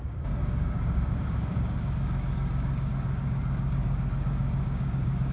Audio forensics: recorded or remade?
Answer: remade